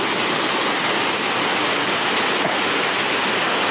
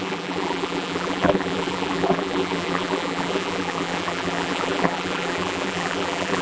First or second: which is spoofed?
second